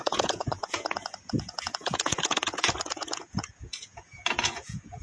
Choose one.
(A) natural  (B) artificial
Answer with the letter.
B